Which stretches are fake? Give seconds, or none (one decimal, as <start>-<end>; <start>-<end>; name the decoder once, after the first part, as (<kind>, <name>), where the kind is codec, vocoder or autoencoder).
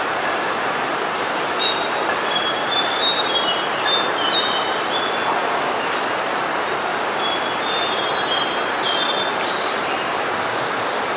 0.0-4.1 (vocoder, BigVGAN v2); 6.9-8.9